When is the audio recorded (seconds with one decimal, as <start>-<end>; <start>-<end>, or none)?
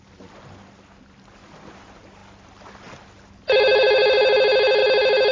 0.0-5.3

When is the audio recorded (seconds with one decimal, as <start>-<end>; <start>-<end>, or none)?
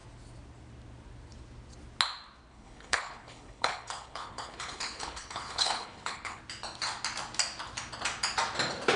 0.0-2.5; 6.4-9.0